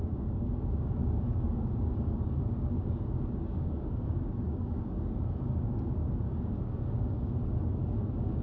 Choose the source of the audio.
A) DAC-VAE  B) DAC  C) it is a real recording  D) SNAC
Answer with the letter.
B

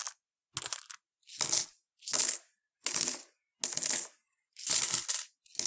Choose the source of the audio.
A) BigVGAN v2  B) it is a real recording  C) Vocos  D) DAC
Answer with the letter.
B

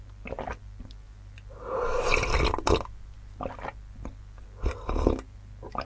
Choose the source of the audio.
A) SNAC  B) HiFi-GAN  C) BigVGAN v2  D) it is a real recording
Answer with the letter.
D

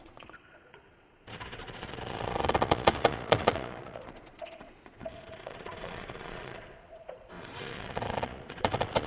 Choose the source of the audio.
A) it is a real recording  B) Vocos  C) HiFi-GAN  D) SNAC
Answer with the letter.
B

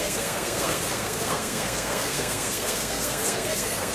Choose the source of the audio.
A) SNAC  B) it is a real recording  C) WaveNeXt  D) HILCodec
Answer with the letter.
A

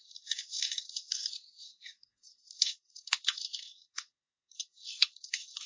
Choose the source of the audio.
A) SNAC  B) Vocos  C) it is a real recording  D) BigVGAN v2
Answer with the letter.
A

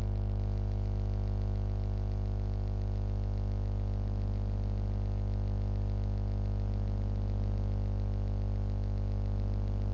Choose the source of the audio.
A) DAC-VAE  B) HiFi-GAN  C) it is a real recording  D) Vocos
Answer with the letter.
C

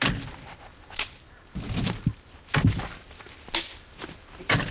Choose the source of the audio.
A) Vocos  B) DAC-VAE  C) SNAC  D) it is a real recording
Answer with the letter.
D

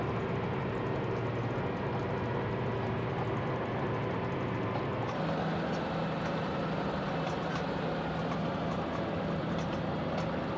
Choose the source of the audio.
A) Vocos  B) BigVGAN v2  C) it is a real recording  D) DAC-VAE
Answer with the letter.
C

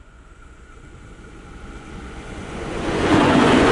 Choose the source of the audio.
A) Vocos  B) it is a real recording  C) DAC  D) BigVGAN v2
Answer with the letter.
A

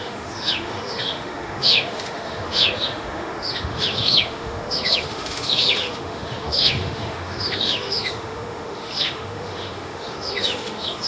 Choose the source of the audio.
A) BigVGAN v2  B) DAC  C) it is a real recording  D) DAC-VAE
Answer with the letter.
D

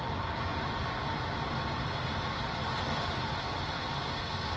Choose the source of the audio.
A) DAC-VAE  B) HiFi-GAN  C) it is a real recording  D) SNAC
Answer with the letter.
C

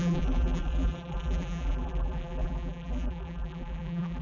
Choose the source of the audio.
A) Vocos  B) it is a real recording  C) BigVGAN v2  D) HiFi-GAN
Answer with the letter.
C